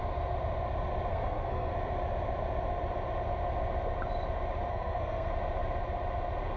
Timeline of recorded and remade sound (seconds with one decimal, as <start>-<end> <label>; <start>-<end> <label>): 0.0-1.1 recorded; 1.1-1.7 remade; 1.7-4.7 recorded; 4.7-5.3 remade; 5.3-6.6 recorded